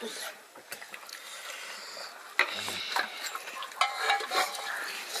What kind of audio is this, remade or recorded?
recorded